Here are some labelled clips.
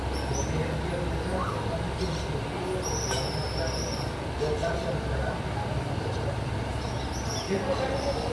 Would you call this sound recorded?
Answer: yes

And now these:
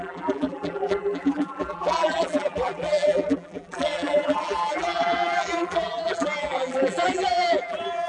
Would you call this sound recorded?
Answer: no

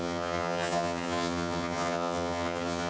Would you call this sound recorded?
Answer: no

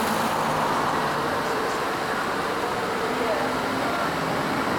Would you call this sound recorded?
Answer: yes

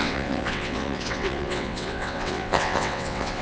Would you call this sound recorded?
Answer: no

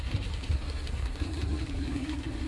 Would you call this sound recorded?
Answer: no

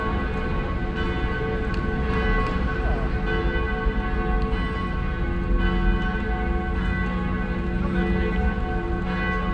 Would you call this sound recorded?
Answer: yes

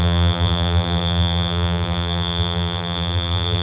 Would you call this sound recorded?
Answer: no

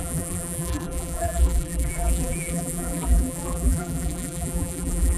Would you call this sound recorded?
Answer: no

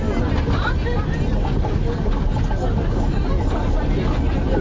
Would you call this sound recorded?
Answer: yes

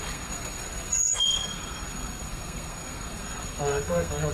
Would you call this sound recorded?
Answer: no